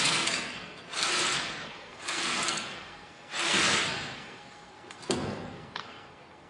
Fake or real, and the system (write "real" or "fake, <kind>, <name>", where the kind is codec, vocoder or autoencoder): fake, codec, SNAC